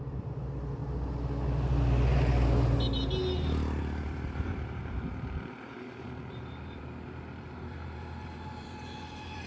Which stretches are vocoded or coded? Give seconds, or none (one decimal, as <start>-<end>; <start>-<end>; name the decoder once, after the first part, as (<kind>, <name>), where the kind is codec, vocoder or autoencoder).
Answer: 0.0-0.8 (vocoder, BigVGAN v2); 3.8-9.5